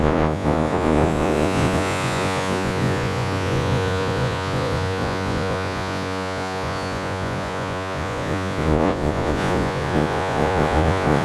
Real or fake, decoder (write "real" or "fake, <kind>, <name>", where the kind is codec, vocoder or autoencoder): fake, vocoder, Vocos